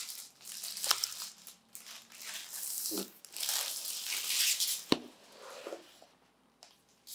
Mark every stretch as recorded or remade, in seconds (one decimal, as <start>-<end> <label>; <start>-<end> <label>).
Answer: 0.0-7.1 recorded